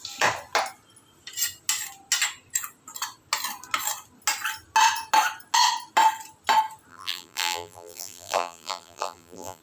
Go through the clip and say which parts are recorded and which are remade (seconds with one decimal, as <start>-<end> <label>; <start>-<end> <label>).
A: 0.0-6.9 recorded; 6.9-9.6 remade